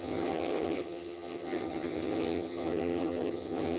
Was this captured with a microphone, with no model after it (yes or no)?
no